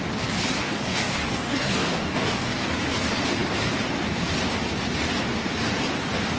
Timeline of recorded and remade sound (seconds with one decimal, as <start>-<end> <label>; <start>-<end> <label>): 0.0-0.6 recorded; 0.6-2.7 remade; 2.7-6.4 recorded